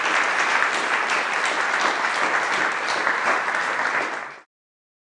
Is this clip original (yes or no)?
yes